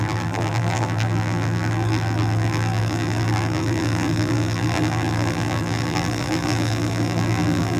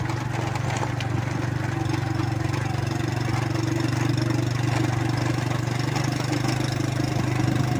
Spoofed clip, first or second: first